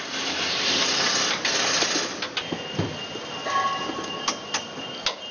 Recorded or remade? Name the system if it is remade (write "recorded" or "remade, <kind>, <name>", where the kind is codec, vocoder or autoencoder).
recorded